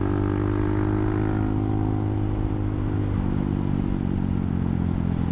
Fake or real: real